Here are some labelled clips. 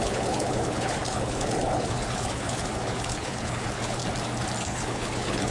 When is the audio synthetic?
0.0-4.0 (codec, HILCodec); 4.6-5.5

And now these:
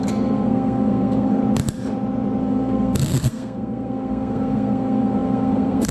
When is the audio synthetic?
0.0-1.4 (codec, SNAC); 2.4-5.9

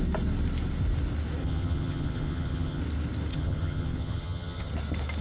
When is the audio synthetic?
1.4-2.8 (vocoder, HiFi-GAN); 3.3-4.7